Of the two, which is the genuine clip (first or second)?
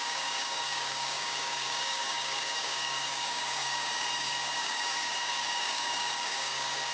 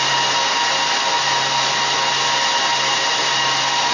second